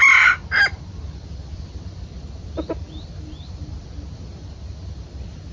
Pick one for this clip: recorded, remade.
recorded